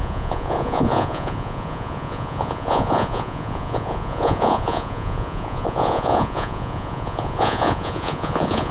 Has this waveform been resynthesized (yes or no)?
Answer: yes